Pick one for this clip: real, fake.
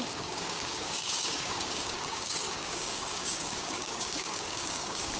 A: fake